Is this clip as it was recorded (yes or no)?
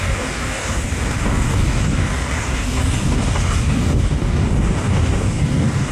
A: no